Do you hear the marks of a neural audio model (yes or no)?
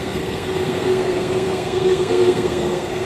yes